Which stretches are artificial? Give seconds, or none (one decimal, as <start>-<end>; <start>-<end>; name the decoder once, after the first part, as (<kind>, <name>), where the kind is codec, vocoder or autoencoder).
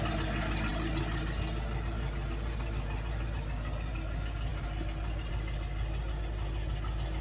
none